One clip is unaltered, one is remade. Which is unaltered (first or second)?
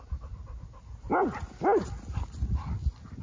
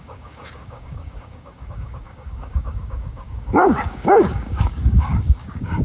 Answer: first